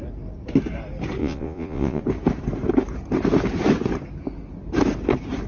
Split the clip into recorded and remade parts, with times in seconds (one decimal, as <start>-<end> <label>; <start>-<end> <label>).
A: 0.0-1.2 recorded; 1.2-2.0 remade; 2.0-5.5 recorded